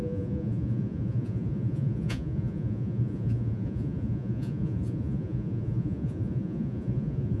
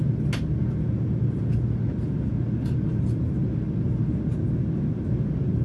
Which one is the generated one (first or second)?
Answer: first